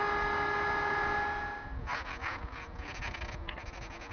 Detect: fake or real real